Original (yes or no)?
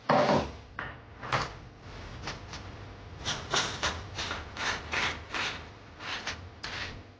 yes